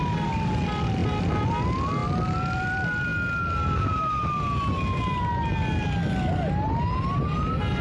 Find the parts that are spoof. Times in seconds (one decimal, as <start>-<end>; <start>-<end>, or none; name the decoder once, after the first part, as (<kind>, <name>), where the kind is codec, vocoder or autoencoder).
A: none